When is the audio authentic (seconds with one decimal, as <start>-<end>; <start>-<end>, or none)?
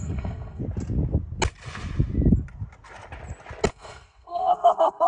0.6-3.7